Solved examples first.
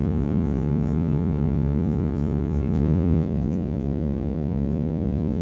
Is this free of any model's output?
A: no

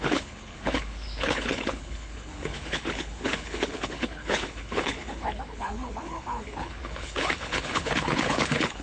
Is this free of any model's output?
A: no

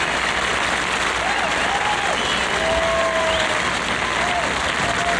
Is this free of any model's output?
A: yes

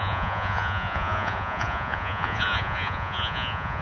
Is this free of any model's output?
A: no